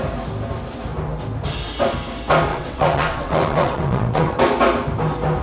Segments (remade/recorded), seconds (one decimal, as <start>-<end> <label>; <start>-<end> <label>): 0.0-2.5 recorded; 2.5-4.4 remade; 4.4-5.4 recorded